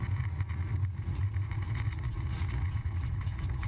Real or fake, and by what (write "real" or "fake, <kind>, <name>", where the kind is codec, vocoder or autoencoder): fake, vocoder, Vocos